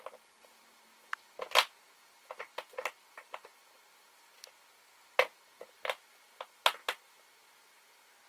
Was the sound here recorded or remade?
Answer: recorded